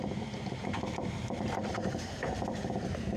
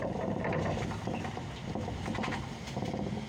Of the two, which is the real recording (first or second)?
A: second